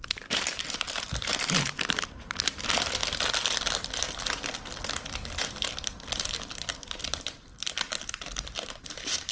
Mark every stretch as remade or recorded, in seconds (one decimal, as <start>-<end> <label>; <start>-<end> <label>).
0.0-3.0 remade; 3.0-8.1 recorded; 8.1-9.3 remade